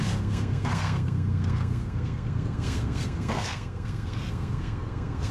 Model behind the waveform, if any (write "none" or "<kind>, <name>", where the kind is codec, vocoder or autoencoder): codec, SNAC